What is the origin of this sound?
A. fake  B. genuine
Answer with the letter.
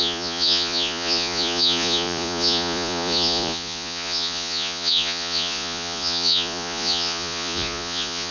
A